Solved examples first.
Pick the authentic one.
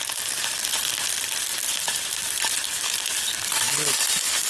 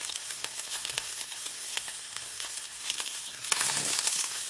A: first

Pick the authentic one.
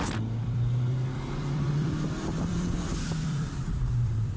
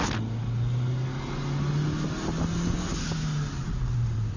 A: second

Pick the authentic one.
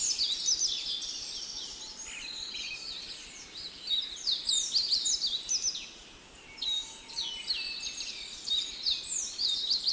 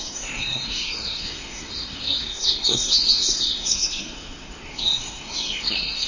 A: first